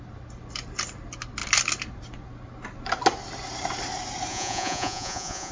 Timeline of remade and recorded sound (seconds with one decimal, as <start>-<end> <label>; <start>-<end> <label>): 0.0-4.3 recorded; 4.3-5.5 remade